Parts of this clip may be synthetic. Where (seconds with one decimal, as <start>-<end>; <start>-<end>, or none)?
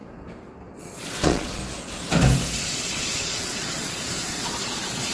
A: 0.8-1.6; 2.6-5.1